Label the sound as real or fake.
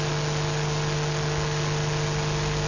real